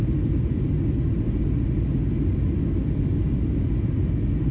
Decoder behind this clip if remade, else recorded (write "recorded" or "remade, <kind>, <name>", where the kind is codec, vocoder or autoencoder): recorded